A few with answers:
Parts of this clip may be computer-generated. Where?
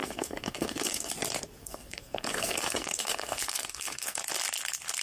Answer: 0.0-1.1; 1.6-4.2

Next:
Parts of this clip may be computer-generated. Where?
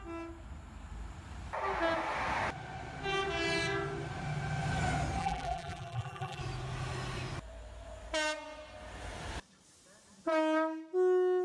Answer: 5.2-6.4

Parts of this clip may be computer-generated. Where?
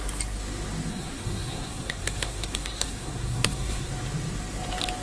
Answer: 0.9-3.9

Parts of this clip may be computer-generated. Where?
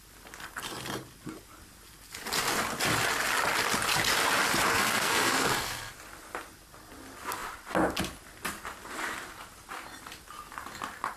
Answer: 4.7-5.9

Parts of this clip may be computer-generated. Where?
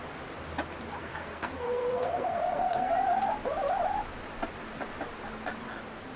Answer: 1.0-2.9